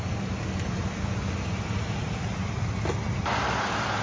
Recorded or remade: recorded